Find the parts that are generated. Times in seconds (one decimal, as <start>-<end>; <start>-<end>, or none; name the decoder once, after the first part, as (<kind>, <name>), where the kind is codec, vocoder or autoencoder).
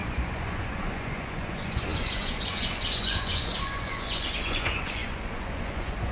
0.0-6.1 (vocoder, Vocos)